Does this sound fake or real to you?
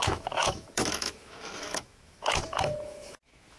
fake